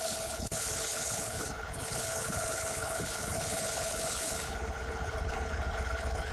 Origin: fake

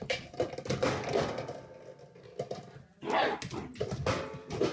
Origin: real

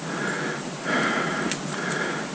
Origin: real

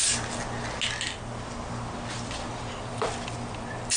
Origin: real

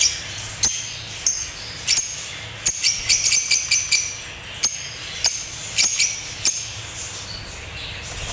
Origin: real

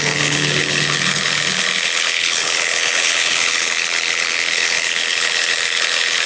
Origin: fake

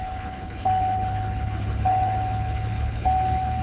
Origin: fake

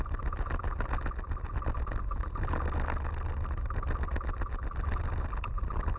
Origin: real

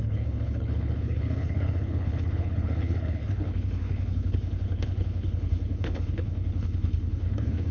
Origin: fake